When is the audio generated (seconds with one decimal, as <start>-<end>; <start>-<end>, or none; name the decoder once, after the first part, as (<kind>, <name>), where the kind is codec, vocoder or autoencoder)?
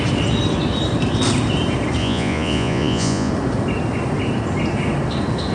2.0-3.3 (vocoder, Vocos)